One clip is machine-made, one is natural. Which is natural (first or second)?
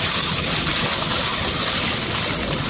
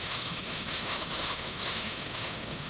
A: first